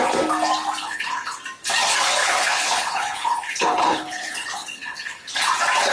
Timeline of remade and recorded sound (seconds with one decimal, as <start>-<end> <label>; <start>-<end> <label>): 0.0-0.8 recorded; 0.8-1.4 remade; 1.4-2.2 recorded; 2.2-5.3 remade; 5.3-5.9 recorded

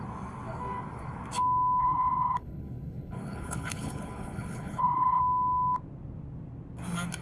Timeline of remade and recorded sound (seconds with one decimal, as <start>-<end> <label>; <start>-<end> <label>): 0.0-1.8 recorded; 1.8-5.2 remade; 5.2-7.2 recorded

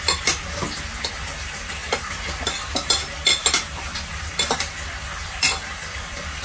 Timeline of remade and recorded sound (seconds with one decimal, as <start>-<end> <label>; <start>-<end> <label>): 0.0-6.4 recorded

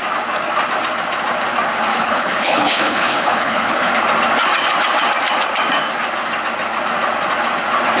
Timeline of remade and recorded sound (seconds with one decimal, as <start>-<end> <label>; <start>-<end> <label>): 0.0-1.9 recorded; 1.9-3.9 remade; 3.9-8.0 recorded